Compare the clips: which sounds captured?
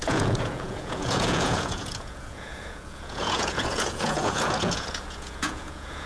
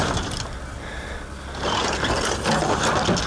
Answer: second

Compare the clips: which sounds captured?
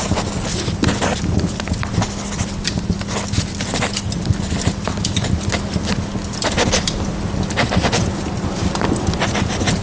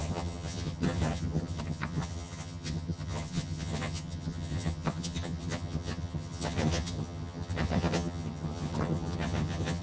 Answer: first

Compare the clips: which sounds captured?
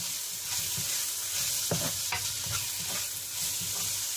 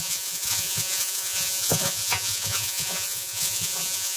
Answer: first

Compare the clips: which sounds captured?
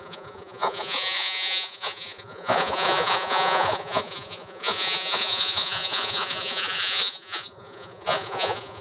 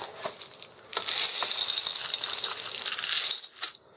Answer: second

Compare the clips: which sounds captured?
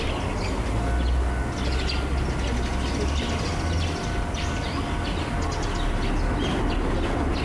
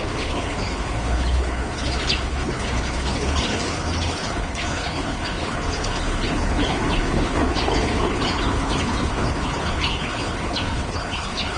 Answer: first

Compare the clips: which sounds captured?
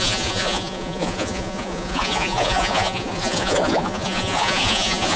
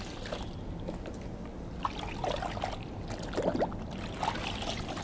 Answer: second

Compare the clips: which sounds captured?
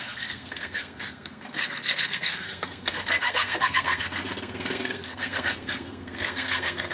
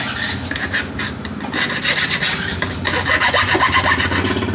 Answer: second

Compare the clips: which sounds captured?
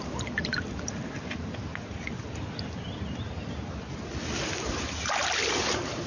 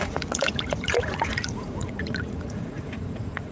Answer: first